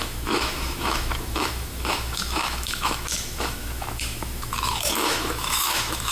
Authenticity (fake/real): fake